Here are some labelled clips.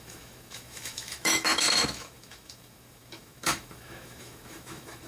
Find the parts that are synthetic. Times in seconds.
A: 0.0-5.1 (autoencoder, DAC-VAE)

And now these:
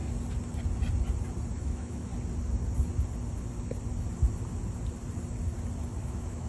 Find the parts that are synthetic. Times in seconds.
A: 1.5-2.1 (autoencoder, DAC-VAE); 6.0-6.5

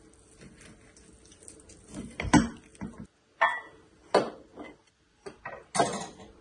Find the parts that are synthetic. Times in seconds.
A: none

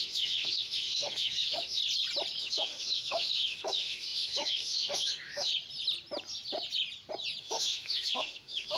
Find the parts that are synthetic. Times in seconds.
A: 0.0-1.8 (autoencoder, DAC-VAE); 2.4-5.5; 7.4-8.8

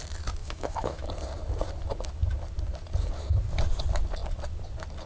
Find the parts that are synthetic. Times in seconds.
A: 0.4-1.1 (autoencoder, DAC-VAE)

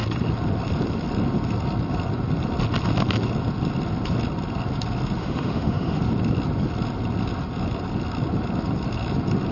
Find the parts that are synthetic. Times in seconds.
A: 5.2-6.0 (autoencoder, DAC-VAE)

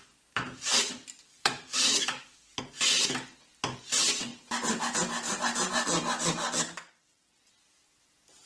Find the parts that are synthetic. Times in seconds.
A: 1.3-2.6 (autoencoder, DAC-VAE)

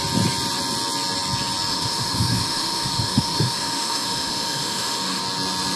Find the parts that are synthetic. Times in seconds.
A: 1.7-5.2 (autoencoder, DAC-VAE)